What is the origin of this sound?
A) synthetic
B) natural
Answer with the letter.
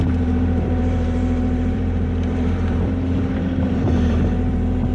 A